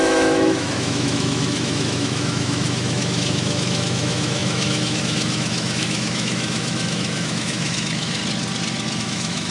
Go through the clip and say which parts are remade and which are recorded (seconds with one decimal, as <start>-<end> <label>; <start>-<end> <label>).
0.0-8.2 remade; 8.2-9.0 recorded; 9.0-9.5 remade